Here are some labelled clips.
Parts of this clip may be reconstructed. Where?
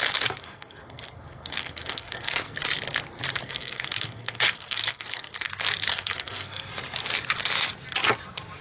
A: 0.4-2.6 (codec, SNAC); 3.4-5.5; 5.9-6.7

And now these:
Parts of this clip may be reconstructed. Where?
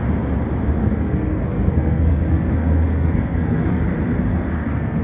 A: 0.8-3.8 (codec, SNAC); 4.3-5.0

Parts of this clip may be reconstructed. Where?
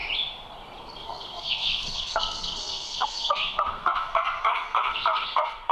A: 0.8-5.7 (codec, SNAC)